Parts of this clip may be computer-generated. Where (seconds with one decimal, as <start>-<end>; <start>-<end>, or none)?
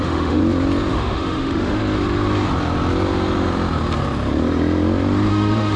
0.0-0.4; 0.9-1.8; 5.3-5.8